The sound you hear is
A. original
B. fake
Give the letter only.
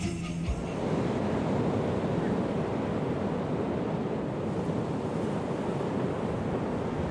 A